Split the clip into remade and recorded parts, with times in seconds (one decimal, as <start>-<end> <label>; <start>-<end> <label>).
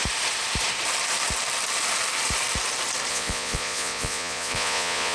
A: 0.0-3.1 recorded; 3.1-5.1 remade